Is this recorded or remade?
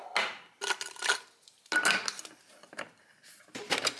recorded